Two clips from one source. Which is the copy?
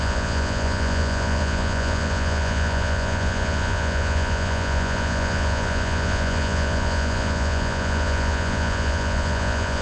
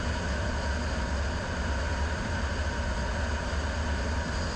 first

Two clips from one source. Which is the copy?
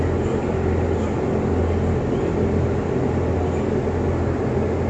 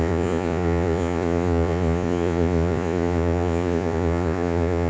second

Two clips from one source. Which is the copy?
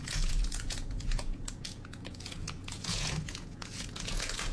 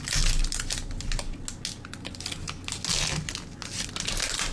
first